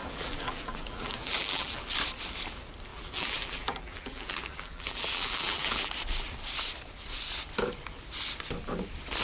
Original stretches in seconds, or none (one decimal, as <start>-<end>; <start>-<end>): 1.9-2.9; 5.9-9.2